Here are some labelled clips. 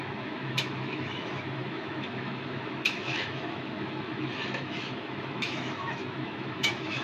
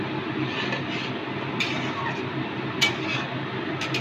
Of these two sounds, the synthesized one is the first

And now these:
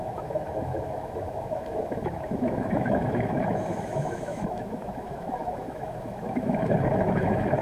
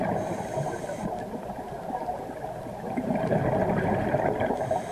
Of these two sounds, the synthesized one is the first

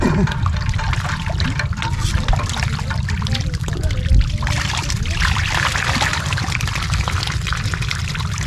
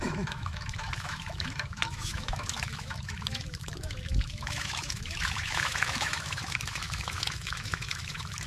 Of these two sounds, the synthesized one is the second